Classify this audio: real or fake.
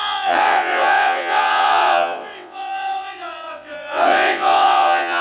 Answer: fake